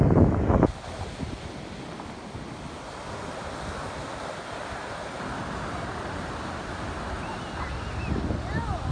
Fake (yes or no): no